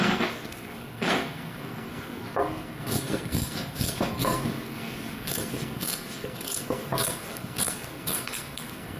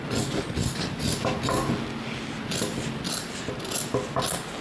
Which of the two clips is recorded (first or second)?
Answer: second